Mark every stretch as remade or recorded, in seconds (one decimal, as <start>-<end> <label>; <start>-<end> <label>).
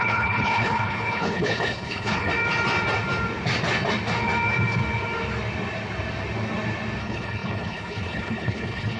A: 0.0-2.3 remade; 2.3-7.0 recorded; 7.0-9.0 remade